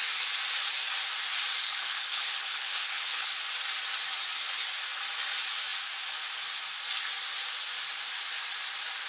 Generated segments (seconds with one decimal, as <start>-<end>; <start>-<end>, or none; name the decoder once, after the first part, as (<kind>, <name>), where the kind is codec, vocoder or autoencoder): 1.6-3.3 (codec, HILCodec)